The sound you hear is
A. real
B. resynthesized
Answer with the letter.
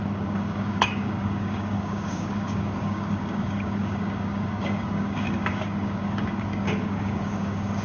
B